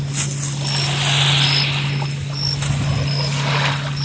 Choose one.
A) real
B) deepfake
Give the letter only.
A